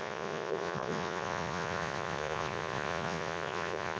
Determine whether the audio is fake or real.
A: fake